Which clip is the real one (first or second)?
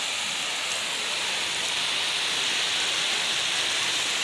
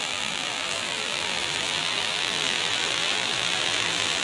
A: first